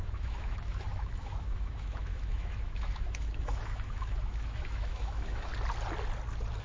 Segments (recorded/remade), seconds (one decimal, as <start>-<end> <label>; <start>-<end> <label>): 0.0-5.5 remade; 5.5-6.6 recorded